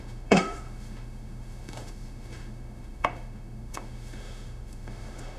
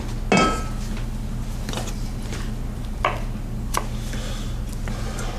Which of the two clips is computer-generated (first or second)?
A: first